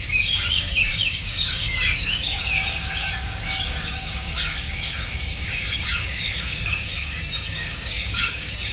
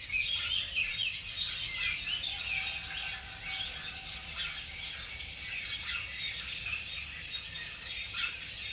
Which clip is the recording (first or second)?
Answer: second